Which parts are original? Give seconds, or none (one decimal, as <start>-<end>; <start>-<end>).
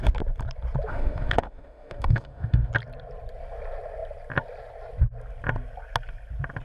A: 0.0-0.9; 2.7-6.6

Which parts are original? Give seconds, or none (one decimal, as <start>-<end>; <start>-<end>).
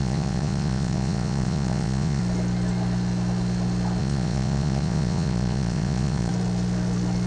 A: 2.2-4.0; 6.3-7.3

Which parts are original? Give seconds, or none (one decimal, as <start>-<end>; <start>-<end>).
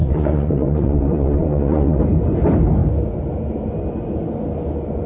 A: 2.0-5.1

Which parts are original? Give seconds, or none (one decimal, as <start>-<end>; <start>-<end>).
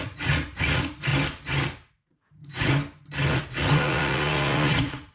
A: 1.1-1.9; 2.8-3.3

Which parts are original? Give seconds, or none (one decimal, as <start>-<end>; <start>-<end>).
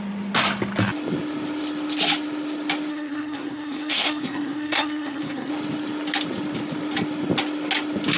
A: 0.0-2.9; 5.5-8.2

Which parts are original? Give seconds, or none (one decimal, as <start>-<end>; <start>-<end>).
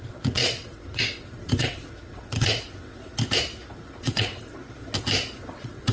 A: 3.1-4.0; 4.6-5.4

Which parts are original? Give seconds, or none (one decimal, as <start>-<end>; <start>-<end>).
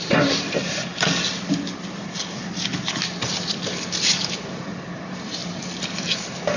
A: 0.9-4.9; 5.4-6.6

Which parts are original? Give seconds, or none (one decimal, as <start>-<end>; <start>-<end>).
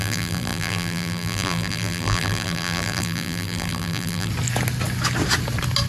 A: 4.3-5.9